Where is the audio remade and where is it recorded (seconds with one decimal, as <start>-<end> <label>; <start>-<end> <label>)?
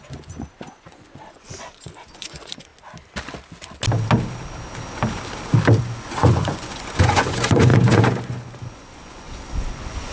0.0-2.7 remade; 2.7-5.8 recorded; 5.8-10.1 remade